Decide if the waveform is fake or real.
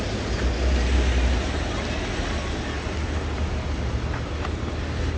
real